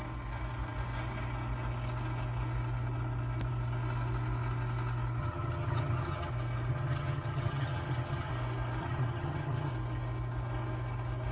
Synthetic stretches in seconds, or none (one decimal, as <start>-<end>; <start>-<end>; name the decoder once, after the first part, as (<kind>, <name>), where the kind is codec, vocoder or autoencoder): 5.2-6.3 (vocoder, HiFi-GAN); 6.7-8.3; 8.8-9.7